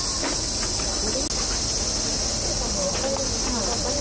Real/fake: real